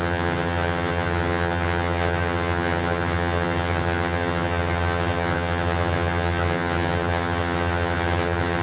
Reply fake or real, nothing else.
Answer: fake